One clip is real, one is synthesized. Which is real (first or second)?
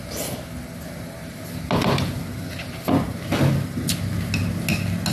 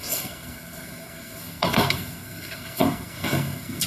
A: first